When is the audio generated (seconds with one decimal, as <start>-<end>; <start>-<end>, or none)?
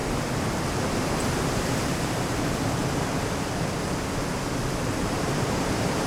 1.3-2.8; 4.9-6.1